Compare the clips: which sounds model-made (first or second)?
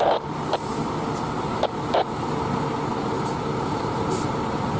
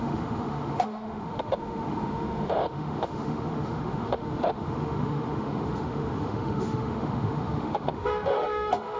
second